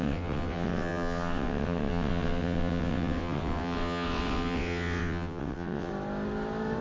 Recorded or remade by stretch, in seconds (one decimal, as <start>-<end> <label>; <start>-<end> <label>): 0.0-5.9 remade; 5.9-6.8 recorded